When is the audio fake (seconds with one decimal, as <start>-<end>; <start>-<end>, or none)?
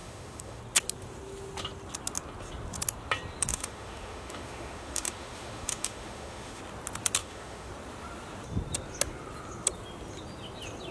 0.0-0.6; 3.5-6.6; 7.2-7.7